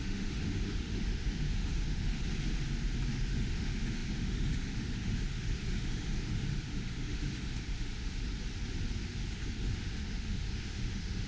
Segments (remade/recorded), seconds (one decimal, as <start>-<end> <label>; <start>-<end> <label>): 0.0-2.2 remade; 2.2-3.1 recorded; 3.1-8.3 remade; 8.3-9.0 recorded; 9.0-11.3 remade